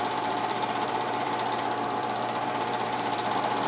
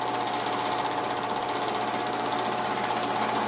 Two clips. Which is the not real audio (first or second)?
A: first